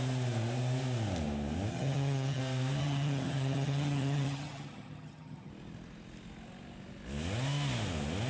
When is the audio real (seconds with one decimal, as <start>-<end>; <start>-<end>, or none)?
0.0-1.7; 2.4-2.8; 5.5-8.3